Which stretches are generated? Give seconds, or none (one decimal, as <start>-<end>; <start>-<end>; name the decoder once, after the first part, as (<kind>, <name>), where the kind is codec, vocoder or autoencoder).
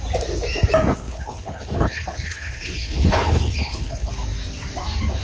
1.0-4.1 (codec, HILCodec)